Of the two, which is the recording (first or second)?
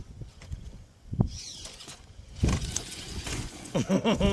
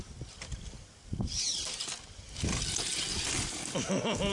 second